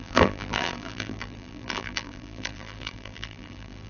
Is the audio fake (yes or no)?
yes